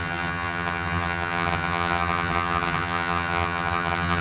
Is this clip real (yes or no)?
no